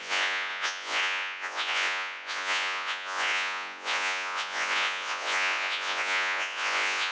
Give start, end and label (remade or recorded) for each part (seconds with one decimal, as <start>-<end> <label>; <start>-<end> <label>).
0.0-7.1 remade